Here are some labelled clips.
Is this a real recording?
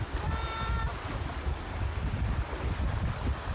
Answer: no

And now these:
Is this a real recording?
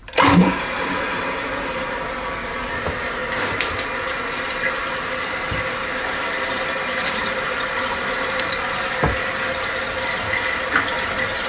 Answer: yes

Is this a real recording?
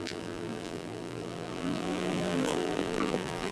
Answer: no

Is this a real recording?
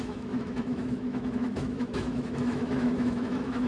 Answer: no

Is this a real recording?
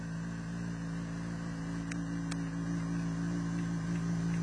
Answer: yes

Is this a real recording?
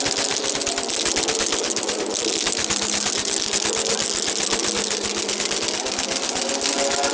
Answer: yes